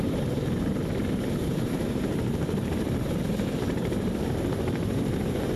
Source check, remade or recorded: remade